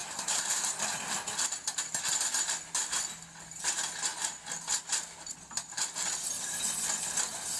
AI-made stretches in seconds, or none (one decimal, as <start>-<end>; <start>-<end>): 0.0-0.7